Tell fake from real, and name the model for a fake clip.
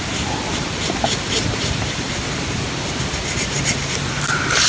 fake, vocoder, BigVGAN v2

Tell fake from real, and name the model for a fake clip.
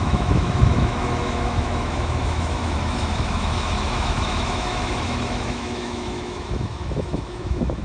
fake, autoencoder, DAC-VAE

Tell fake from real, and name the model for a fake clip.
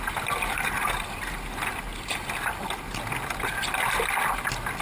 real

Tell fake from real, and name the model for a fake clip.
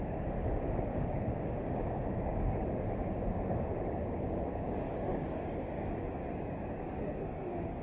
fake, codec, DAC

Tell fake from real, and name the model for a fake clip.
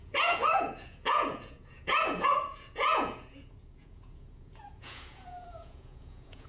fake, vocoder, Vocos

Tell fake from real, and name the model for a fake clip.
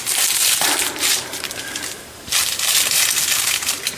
fake, vocoder, BigVGAN v2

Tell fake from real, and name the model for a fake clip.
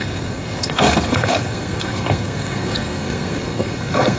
fake, codec, SNAC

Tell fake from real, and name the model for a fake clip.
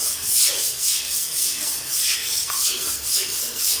fake, codec, SNAC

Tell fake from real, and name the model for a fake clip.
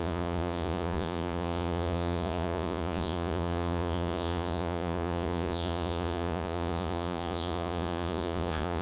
fake, vocoder, Vocos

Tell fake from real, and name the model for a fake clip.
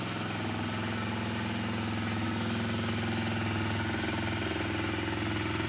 real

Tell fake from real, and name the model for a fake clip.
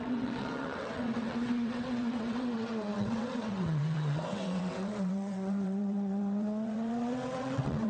fake, vocoder, WaveNeXt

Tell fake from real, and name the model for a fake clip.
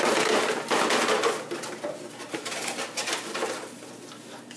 real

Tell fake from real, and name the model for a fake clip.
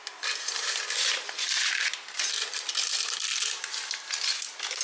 real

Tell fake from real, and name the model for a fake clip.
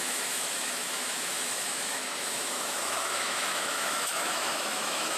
fake, autoencoder, DAC-VAE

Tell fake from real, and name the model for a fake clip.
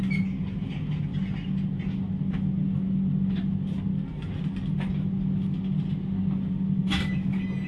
real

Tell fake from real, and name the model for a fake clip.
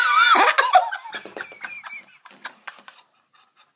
real